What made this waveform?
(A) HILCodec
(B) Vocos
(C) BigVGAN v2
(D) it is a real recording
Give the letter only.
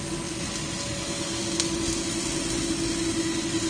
D